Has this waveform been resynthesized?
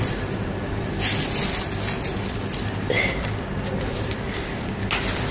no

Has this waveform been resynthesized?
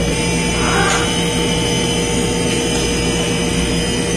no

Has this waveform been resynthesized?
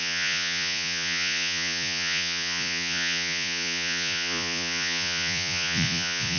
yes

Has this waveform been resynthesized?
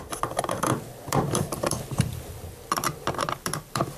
yes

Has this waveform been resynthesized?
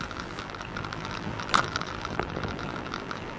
yes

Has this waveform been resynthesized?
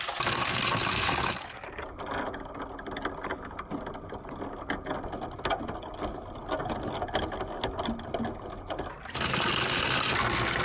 no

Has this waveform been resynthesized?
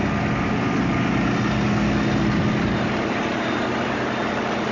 no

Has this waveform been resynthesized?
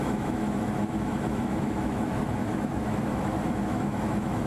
yes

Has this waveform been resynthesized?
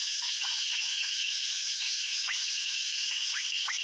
yes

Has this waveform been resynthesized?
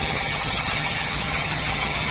yes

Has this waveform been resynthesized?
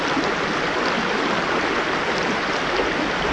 no